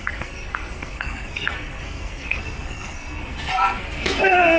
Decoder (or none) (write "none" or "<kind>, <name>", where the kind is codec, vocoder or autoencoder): codec, SNAC